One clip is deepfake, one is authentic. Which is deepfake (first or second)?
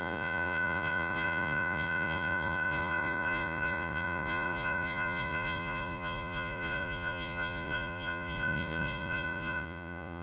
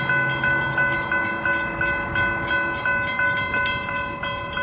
first